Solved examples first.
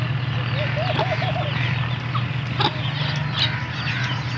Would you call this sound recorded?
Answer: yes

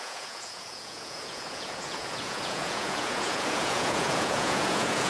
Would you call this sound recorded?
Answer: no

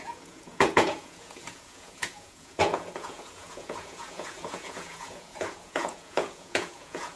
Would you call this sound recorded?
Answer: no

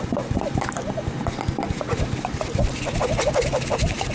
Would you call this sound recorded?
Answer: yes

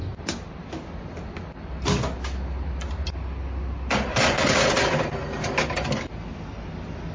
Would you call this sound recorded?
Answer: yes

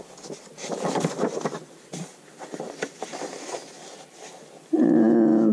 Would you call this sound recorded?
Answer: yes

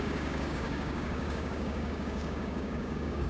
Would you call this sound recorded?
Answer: no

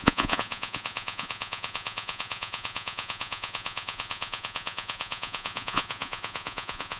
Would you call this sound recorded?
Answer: no